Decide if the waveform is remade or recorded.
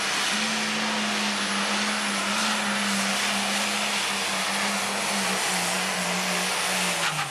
recorded